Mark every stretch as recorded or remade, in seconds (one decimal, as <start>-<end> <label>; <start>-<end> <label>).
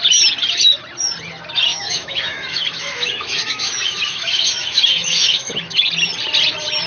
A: 0.0-1.7 recorded; 1.7-5.8 remade; 5.8-6.9 recorded